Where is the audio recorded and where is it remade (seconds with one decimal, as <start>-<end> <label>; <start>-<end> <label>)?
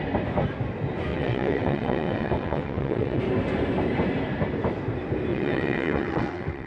0.0-1.1 recorded; 1.1-3.2 remade; 3.2-5.3 recorded; 5.3-6.7 remade